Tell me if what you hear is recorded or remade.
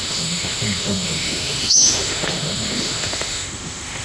remade